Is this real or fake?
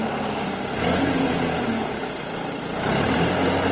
real